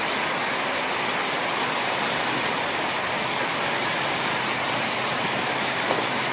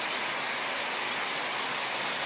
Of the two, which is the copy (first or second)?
first